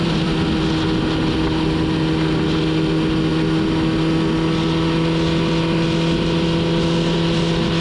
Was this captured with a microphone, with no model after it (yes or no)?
yes